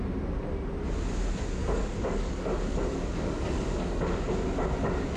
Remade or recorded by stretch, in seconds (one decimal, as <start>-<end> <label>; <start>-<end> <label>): 0.0-1.6 recorded; 1.6-4.3 remade; 4.3-5.2 recorded